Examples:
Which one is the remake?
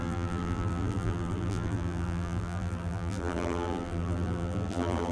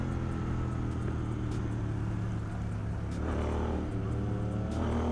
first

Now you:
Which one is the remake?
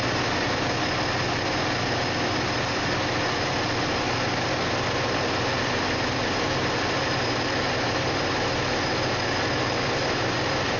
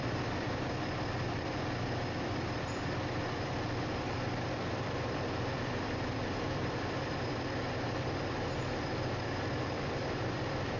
second